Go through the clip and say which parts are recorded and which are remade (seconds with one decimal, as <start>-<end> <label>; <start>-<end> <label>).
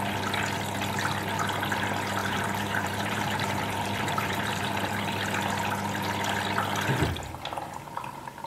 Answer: 0.0-2.2 recorded; 2.2-5.2 remade; 5.2-8.5 recorded